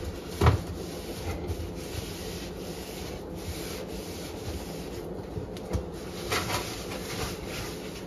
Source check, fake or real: real